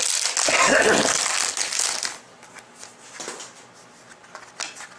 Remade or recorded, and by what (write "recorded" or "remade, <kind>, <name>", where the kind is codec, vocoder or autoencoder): recorded